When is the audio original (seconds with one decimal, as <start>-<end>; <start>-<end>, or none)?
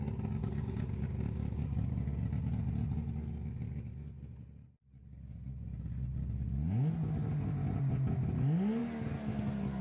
0.0-0.4; 1.9-9.8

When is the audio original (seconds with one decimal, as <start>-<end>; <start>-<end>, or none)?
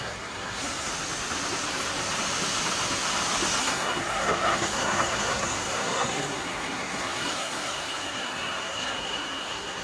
0.9-3.6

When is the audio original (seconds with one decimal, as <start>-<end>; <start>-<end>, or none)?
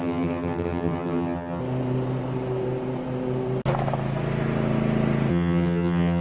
1.6-5.3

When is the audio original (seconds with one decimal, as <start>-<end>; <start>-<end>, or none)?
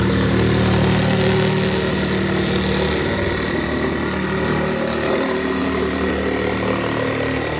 0.0-5.6; 6.1-7.6